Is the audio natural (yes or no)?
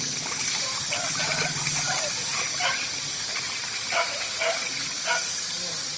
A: no